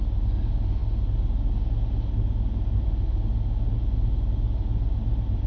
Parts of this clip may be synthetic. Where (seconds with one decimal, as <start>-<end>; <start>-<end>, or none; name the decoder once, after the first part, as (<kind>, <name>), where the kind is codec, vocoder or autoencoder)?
none

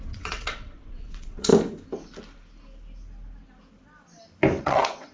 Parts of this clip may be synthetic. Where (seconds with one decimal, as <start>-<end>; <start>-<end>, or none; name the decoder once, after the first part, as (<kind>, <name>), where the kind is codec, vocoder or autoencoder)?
0.0-1.5 (vocoder, WaveNeXt); 4.6-5.1

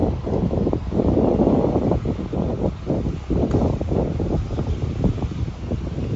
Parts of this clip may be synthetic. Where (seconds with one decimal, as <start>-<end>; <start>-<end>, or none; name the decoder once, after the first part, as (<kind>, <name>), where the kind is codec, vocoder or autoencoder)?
none

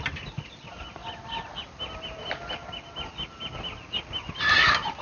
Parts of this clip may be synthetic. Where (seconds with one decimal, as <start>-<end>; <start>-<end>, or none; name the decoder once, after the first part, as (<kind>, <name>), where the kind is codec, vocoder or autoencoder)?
none

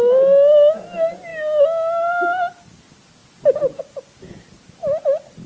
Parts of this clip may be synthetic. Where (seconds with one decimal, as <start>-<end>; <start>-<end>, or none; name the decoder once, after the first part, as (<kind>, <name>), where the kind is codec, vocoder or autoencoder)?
none